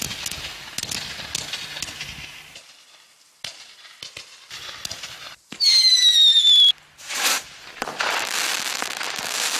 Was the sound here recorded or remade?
recorded